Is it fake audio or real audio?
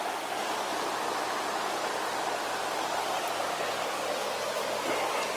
real